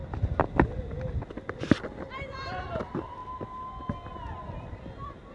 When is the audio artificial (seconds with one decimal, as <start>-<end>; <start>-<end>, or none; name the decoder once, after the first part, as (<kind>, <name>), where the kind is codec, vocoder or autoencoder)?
none